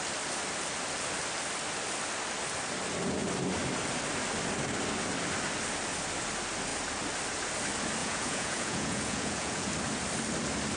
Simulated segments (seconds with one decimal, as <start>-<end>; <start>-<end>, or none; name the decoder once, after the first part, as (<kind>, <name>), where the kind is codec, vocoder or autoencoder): 8.0-9.7 (vocoder, Vocos)